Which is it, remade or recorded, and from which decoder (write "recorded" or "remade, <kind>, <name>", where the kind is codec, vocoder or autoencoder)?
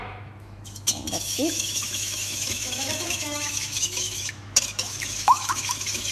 remade, autoencoder, DAC-VAE